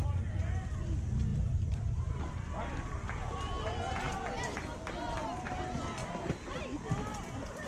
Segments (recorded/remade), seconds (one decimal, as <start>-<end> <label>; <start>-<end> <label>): 0.0-1.3 recorded; 1.3-2.2 remade; 2.2-6.0 recorded; 6.0-6.6 remade; 6.6-7.1 recorded; 7.1-7.7 remade